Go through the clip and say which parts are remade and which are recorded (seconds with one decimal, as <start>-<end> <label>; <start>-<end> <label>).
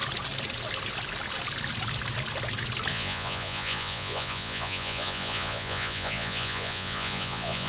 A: 0.0-2.9 recorded; 2.9-7.7 remade